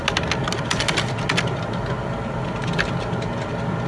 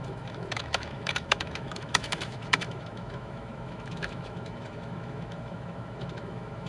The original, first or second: first